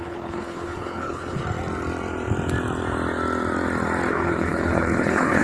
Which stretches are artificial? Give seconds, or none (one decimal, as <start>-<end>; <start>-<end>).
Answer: 0.0-1.4; 4.1-5.4